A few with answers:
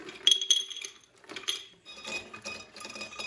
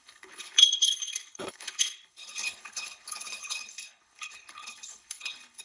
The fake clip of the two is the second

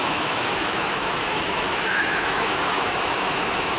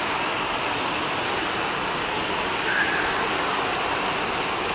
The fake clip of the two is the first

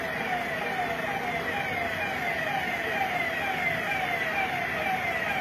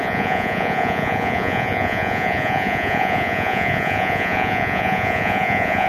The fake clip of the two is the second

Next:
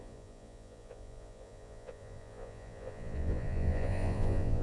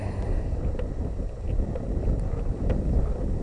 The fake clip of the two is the first